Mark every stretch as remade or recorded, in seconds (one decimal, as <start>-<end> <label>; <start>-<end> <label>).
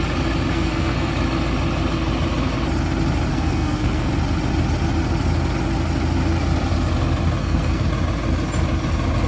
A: 0.0-0.5 recorded; 0.5-1.1 remade; 1.1-3.3 recorded; 3.3-4.1 remade; 4.1-7.4 recorded; 7.4-7.9 remade; 7.9-9.3 recorded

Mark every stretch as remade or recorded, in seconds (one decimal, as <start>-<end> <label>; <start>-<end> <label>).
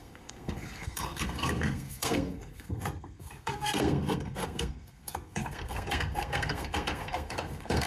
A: 0.0-7.9 remade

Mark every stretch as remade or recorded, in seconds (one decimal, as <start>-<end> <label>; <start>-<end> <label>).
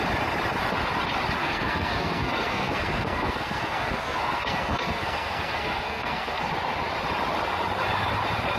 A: 0.0-1.4 recorded; 1.4-6.5 remade; 6.5-8.6 recorded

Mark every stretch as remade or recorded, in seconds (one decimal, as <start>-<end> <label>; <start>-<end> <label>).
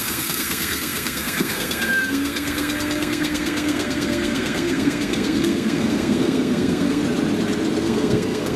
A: 0.0-7.0 remade; 7.0-7.8 recorded; 7.8-8.6 remade